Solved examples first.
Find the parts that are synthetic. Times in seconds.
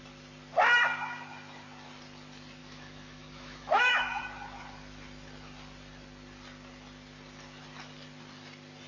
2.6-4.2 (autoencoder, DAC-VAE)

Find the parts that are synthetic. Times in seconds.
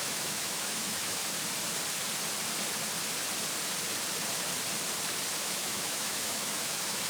0.0-1.2 (autoencoder, DAC-VAE); 5.4-7.1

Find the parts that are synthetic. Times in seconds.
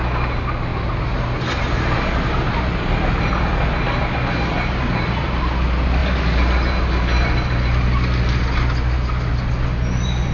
none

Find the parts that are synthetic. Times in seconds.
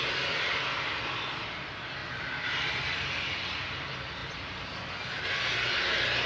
none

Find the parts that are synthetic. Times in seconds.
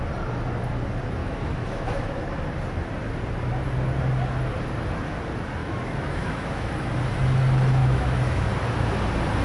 1.2-2.2 (autoencoder, DAC-VAE); 5.6-6.7; 7.8-8.5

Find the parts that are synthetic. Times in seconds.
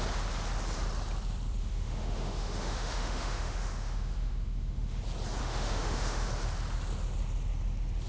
1.6-5.0 (autoencoder, DAC-VAE); 5.4-6.3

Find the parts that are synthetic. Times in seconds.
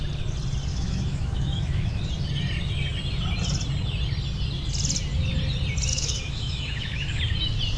0.7-2.0 (autoencoder, DAC-VAE); 5.9-7.2